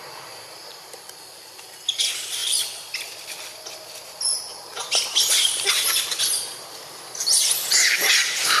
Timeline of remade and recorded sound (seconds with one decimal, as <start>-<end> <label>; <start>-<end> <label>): 0.0-8.6 recorded